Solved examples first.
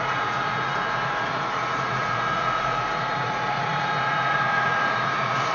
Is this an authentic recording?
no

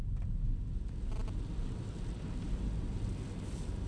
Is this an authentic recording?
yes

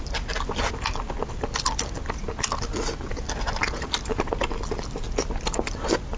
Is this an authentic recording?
yes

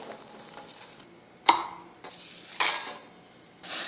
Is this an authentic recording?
yes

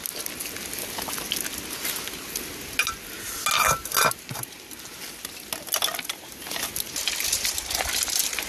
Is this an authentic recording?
yes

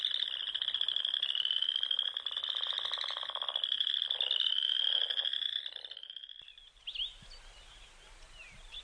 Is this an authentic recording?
yes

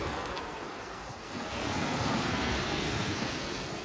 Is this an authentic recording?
no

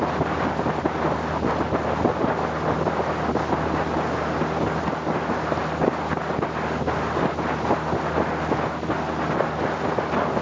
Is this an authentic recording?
yes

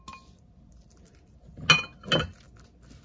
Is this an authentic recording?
yes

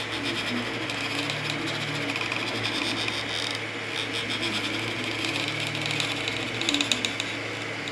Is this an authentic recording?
yes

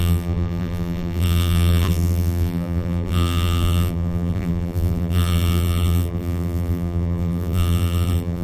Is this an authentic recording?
no